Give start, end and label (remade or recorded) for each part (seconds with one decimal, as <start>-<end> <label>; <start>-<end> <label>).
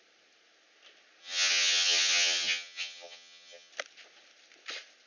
0.0-1.2 recorded; 1.2-3.7 remade; 3.7-5.1 recorded